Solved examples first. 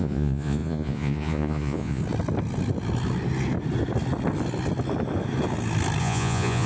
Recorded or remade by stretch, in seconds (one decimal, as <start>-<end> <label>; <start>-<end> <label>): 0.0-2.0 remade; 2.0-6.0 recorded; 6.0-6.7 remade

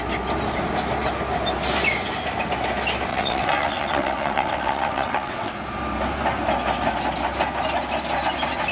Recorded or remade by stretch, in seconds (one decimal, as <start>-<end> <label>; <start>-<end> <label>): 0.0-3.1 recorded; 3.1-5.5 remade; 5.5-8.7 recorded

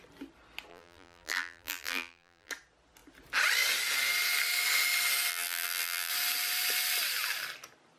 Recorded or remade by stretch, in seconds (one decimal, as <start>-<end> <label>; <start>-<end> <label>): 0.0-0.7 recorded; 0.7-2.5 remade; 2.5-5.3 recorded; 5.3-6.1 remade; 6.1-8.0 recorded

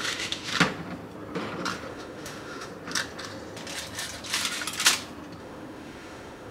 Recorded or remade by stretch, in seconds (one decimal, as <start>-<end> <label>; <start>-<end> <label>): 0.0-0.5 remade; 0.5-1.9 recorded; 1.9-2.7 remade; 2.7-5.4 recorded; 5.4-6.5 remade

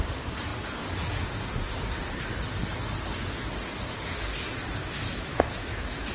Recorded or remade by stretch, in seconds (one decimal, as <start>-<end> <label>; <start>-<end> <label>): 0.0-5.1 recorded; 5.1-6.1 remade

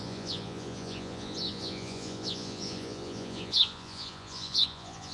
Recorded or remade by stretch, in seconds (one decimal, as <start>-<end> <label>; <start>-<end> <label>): 0.0-5.1 remade